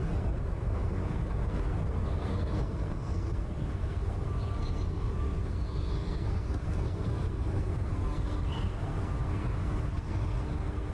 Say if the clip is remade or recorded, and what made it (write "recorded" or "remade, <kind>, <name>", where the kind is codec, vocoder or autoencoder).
remade, codec, SNAC